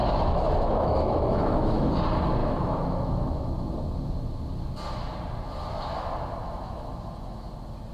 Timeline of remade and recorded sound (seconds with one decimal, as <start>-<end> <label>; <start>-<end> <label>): 0.0-1.9 remade; 1.9-2.4 recorded; 2.4-3.5 remade; 3.5-6.4 recorded; 6.4-7.5 remade; 7.5-7.9 recorded